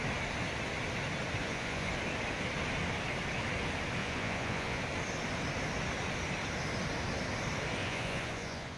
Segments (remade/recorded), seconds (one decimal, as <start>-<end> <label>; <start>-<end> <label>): 0.0-1.4 recorded; 1.4-1.9 remade; 1.9-4.0 recorded; 4.0-4.8 remade; 4.8-7.8 recorded; 7.8-8.8 remade